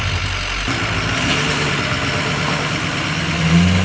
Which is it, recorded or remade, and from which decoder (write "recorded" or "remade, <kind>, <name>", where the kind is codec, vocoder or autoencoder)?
recorded